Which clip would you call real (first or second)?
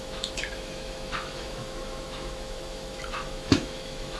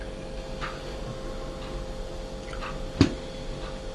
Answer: second